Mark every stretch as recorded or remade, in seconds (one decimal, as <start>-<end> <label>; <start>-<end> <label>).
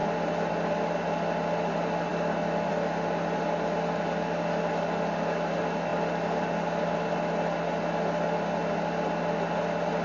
0.0-10.0 recorded